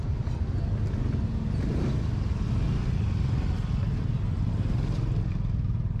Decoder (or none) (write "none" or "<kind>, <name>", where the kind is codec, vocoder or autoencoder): none